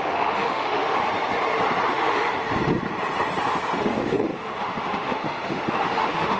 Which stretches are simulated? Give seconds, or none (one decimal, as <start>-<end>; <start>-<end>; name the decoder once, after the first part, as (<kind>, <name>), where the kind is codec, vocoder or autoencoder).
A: 0.0-1.0 (autoencoder, DAC-VAE); 1.9-2.4; 3.8-6.4